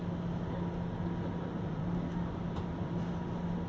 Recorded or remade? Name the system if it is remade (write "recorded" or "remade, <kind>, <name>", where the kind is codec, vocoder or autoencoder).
recorded